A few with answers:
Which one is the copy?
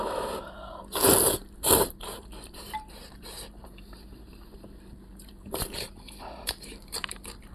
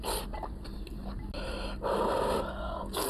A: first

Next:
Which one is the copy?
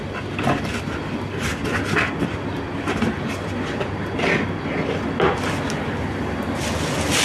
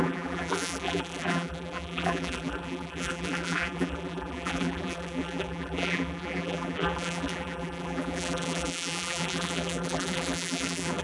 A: second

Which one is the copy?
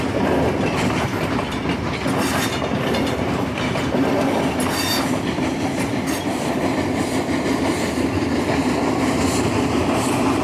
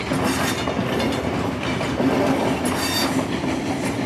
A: first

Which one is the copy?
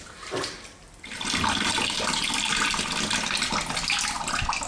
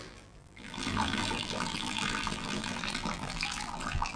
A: second